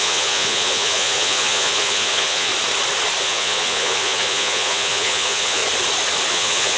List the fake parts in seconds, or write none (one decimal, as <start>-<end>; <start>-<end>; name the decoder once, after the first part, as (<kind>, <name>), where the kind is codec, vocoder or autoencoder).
0.0-2.5 (vocoder, Vocos); 3.2-5.6; 6.3-6.8